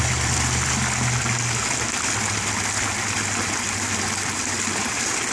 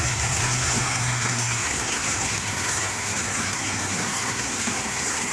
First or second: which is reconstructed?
second